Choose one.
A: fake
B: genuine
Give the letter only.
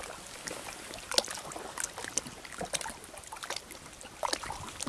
B